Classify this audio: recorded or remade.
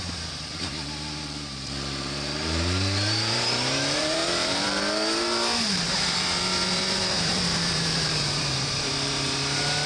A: remade